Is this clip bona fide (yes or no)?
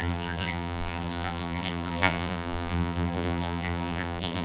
no